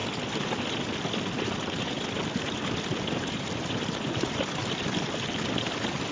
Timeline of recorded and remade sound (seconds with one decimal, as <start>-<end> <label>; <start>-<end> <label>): 0.0-6.1 recorded